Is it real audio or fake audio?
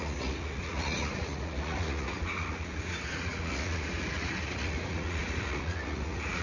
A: fake